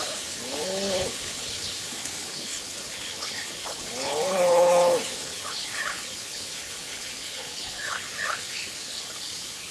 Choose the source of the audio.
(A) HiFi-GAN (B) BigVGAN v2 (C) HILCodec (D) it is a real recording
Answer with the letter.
C